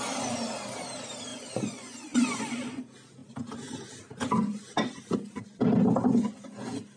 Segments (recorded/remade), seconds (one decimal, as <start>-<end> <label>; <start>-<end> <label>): 0.0-1.3 recorded; 1.3-2.8 remade; 2.8-7.0 recorded